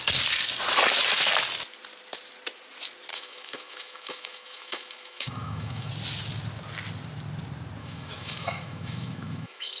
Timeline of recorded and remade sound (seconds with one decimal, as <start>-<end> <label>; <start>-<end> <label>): 0.0-3.1 recorded; 3.1-5.9 remade; 5.9-7.8 recorded; 7.8-9.8 remade